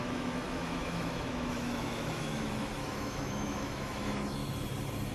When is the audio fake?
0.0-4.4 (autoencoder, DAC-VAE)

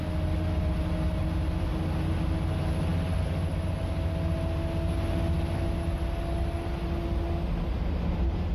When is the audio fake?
none